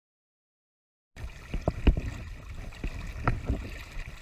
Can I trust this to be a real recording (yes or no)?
yes